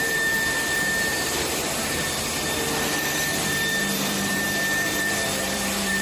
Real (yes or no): no